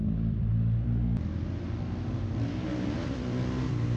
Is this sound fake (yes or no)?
no